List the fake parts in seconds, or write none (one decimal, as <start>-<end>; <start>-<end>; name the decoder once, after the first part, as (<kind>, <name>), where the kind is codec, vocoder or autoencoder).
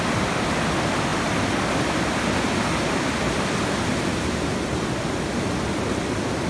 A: none